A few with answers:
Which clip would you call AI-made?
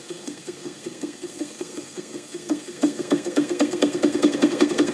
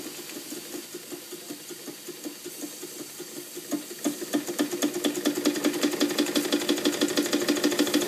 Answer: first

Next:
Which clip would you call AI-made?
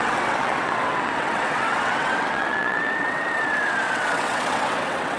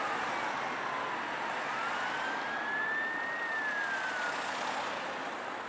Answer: first